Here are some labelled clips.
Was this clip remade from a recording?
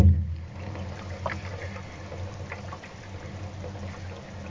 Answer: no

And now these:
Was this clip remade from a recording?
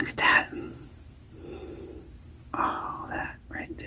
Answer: no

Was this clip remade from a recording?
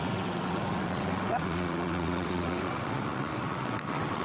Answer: yes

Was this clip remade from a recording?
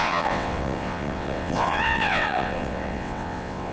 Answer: yes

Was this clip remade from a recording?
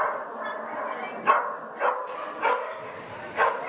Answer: no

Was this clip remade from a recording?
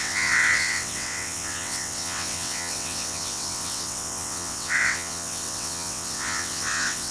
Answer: yes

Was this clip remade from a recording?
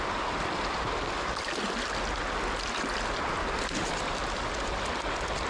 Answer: no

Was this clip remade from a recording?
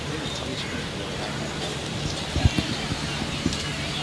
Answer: no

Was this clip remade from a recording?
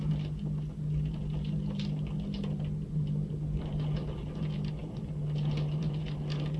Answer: no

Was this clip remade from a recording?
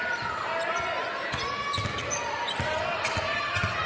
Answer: no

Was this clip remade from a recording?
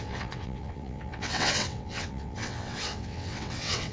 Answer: yes